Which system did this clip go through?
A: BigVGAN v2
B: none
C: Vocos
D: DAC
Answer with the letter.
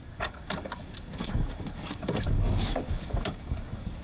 D